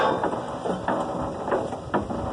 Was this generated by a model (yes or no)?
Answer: no